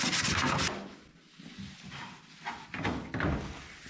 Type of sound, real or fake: real